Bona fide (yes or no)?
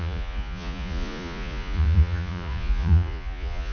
no